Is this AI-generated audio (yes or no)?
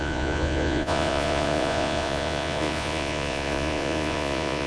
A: yes